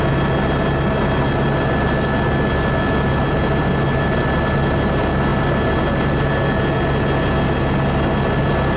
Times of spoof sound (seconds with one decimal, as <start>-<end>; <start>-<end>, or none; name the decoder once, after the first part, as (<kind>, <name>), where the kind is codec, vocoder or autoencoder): none